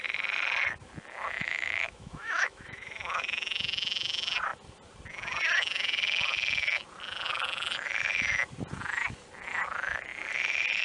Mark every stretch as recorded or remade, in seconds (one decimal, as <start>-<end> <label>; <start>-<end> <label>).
0.0-1.4 recorded; 1.4-3.3 remade; 3.3-10.8 recorded